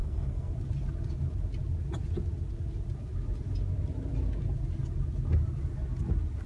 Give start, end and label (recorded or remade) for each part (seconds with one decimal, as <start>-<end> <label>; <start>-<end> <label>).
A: 0.0-0.5 remade; 0.5-6.5 recorded

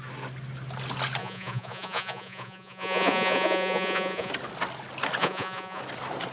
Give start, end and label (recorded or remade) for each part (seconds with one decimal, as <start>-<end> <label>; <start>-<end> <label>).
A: 0.0-1.2 recorded; 1.2-4.3 remade; 4.3-5.2 recorded; 5.2-5.8 remade; 5.8-6.3 recorded

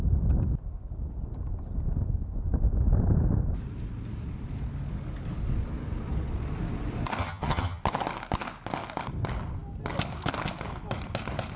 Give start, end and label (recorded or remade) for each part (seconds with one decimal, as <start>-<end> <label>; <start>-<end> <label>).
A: 0.0-7.2 recorded; 7.2-7.8 remade; 7.8-11.6 recorded

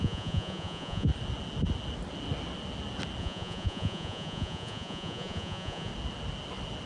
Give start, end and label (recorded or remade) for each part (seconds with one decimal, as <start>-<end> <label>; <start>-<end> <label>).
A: 0.0-1.1 remade; 1.1-3.2 recorded; 3.2-5.9 remade; 5.9-6.9 recorded

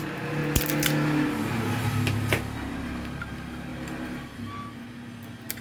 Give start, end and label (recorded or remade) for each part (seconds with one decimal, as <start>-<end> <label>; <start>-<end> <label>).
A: 0.0-5.6 recorded

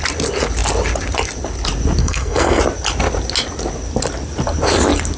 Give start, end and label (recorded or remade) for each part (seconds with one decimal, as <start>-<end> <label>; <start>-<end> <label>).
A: 0.0-2.0 recorded; 2.0-2.6 remade; 2.6-5.2 recorded

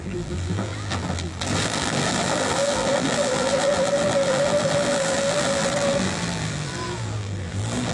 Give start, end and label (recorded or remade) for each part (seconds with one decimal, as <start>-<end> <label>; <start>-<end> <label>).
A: 0.0-7.9 remade